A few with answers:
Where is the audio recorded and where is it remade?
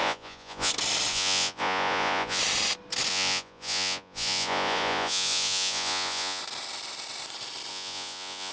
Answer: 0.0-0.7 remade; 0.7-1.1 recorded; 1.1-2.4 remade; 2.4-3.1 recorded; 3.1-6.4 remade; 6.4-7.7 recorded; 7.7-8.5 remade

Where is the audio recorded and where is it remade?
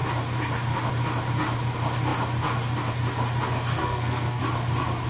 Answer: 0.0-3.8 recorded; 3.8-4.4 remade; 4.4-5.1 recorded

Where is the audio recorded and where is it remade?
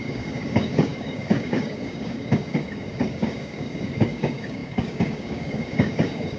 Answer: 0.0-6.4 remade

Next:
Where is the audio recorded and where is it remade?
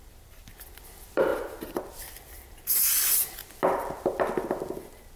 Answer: 0.0-3.4 remade; 3.4-5.2 recorded